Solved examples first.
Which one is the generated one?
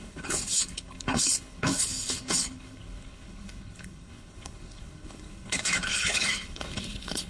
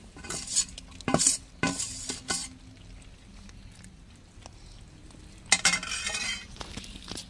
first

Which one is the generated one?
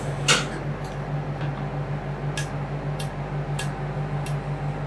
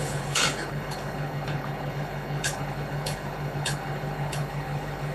second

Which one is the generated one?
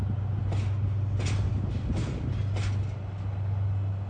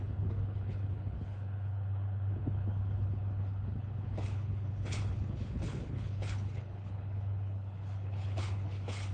second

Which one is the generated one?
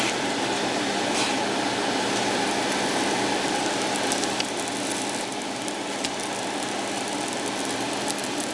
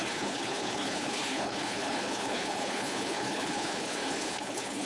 second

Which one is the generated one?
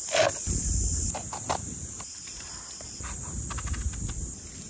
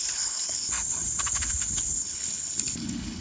second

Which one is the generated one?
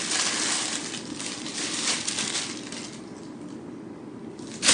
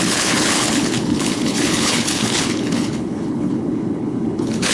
second